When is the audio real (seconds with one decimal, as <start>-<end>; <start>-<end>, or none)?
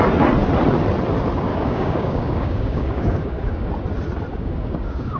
0.0-1.5; 3.7-4.3